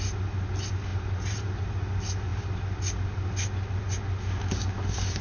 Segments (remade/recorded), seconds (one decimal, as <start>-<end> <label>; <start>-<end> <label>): 0.0-0.9 recorded; 0.9-1.6 remade; 1.6-5.2 recorded